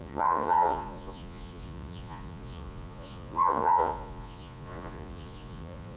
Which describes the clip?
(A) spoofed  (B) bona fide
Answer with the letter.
A